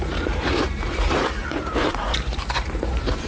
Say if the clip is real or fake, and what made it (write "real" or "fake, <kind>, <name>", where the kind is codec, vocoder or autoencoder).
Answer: fake, vocoder, BigVGAN v2